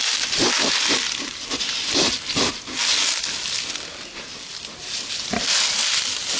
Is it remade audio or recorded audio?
recorded